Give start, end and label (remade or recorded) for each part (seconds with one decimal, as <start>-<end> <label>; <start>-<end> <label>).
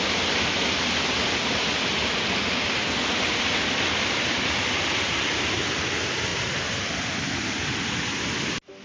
0.0-8.8 recorded